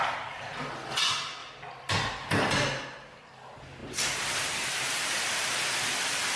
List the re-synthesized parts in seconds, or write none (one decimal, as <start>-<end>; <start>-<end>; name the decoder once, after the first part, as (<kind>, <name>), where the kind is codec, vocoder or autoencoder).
1.4-2.3 (vocoder, BigVGAN v2); 3.8-6.4